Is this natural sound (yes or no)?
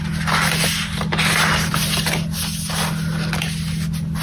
yes